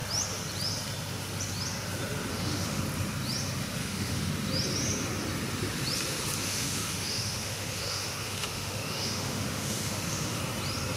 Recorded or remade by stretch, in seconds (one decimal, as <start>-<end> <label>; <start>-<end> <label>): 0.0-2.3 recorded; 2.3-2.8 remade; 2.8-3.8 recorded; 3.8-4.3 remade; 4.3-6.4 recorded; 6.4-10.4 remade; 10.4-11.0 recorded